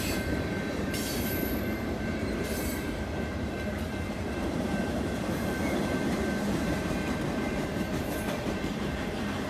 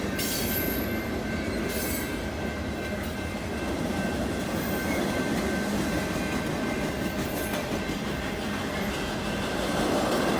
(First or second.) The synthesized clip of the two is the first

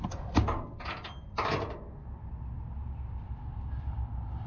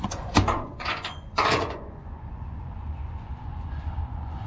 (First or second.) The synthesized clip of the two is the second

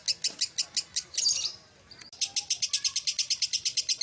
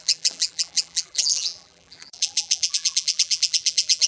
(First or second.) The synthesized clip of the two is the second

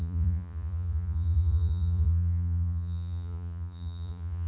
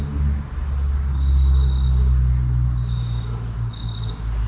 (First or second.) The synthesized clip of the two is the first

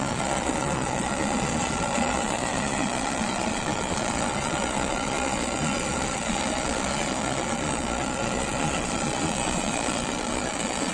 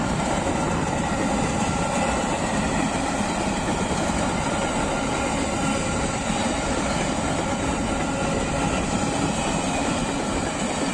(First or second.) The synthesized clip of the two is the first